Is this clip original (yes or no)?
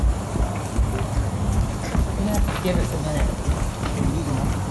yes